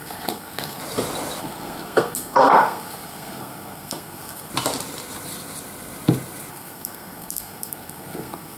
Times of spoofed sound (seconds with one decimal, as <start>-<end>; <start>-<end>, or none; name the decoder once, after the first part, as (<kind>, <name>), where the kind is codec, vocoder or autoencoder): 0.0-0.8 (codec, SNAC); 1.4-4.5; 6.5-8.6